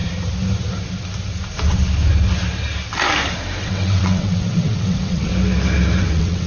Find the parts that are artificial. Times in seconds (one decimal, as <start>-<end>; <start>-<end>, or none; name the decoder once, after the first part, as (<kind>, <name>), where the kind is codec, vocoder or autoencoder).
3.6-5.3 (vocoder, WaveNeXt); 6.0-6.5